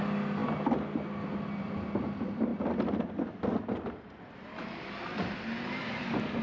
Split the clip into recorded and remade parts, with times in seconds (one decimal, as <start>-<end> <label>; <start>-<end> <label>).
0.0-6.4 recorded